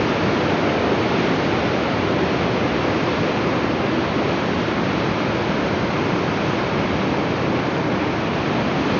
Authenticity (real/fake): real